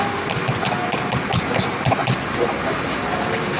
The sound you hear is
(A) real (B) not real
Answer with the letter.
A